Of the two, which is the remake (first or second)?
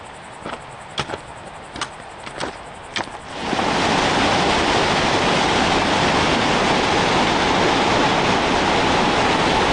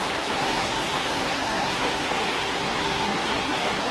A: second